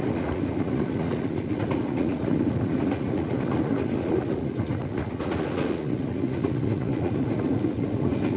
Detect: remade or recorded remade